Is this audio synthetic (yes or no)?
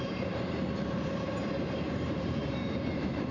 yes